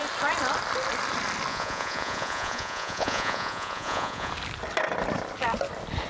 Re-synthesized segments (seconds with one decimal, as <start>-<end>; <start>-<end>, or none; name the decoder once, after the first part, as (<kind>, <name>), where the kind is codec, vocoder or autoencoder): 1.5-4.3 (vocoder, Vocos)